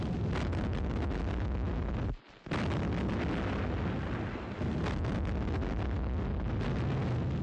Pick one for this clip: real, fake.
real